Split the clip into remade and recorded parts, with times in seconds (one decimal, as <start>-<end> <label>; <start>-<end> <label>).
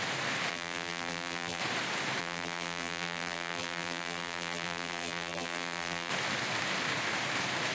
0.0-0.5 recorded; 0.5-1.6 remade; 1.6-2.2 recorded; 2.2-6.1 remade; 6.1-7.7 recorded